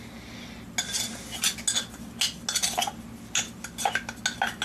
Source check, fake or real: real